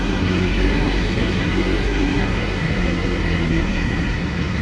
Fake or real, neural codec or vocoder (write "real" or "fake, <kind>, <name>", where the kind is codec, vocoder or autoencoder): fake, codec, SNAC